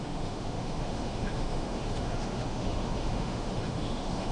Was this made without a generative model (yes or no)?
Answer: no